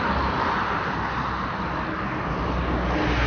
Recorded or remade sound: recorded